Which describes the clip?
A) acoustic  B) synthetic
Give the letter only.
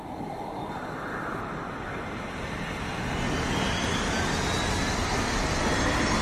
A